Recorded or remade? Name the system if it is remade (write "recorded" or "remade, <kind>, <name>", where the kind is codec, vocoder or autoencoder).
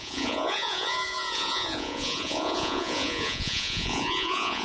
remade, vocoder, Vocos